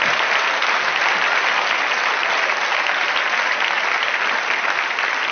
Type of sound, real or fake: real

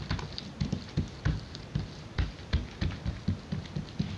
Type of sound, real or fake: real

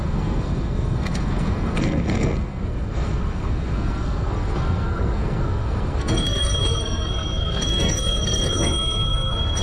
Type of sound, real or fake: fake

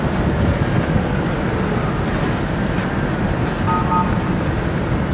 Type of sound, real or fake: real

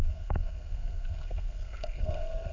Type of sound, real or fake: fake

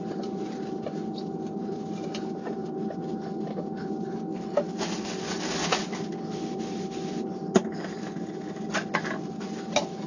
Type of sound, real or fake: real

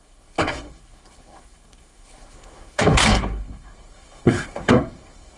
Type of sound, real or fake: fake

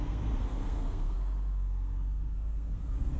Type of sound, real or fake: fake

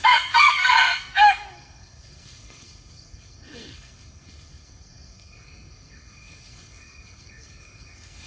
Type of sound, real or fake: fake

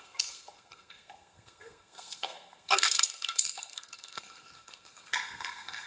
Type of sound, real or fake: fake